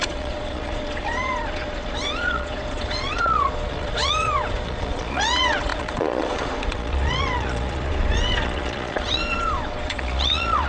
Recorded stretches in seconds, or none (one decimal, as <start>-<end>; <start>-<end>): none